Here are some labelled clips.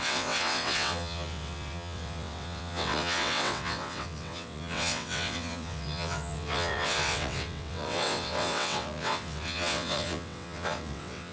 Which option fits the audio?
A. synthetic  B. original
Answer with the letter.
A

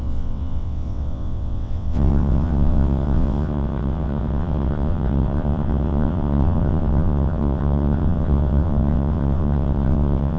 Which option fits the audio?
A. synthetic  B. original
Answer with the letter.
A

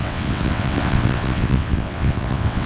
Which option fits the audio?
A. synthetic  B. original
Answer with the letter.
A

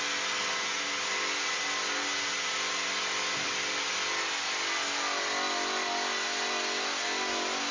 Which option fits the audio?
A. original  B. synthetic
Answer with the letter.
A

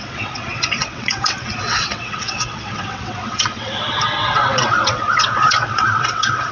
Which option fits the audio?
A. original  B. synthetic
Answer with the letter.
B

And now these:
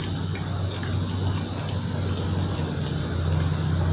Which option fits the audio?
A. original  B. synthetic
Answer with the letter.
A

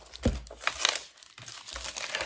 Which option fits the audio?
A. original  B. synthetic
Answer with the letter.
A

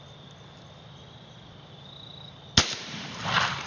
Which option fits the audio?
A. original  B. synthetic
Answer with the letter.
A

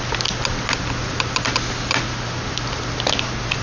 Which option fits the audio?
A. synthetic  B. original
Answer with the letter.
B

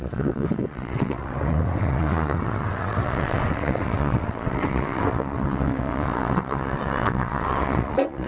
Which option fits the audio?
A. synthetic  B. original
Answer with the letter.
A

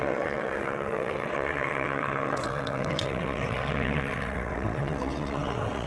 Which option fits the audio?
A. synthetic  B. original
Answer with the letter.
A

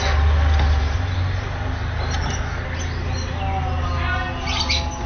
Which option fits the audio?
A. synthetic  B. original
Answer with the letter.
B